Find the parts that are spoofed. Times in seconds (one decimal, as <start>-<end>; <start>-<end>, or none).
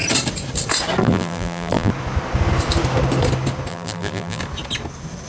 1.0-1.9; 3.7-4.4